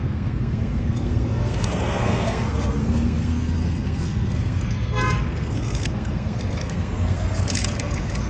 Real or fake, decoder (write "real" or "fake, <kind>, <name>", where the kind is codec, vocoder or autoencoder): fake, codec, SNAC